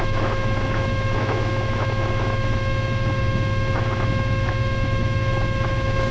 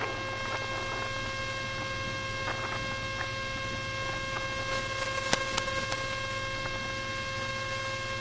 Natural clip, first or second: second